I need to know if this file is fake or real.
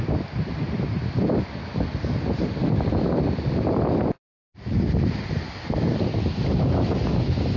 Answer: real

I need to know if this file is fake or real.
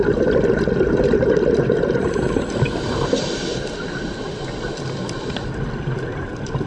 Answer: real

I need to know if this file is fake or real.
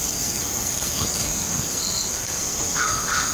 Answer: fake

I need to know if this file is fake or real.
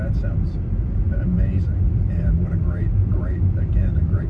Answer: real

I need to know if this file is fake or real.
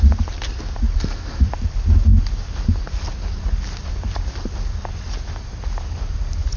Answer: real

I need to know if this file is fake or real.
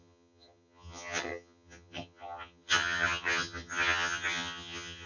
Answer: fake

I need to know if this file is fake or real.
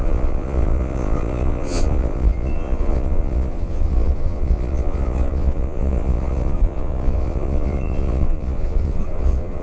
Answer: fake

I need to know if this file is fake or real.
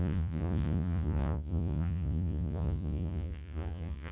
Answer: fake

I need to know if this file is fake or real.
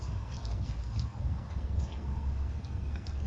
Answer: fake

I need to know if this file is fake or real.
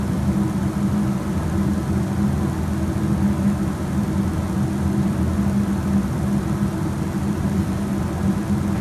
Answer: real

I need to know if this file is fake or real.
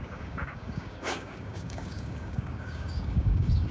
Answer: fake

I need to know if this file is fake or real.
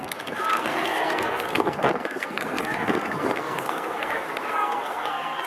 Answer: fake